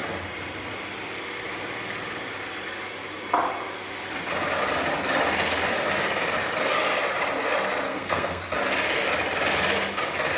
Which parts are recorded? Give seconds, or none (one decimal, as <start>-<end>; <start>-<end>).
0.0-7.9; 8.4-10.4